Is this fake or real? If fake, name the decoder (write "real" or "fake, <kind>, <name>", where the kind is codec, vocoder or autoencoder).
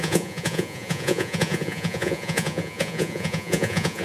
fake, vocoder, Vocos